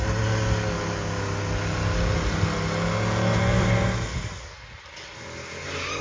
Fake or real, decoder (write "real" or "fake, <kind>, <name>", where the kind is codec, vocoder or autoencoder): real